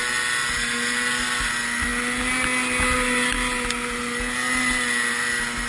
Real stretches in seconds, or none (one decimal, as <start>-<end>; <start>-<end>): 0.0-5.7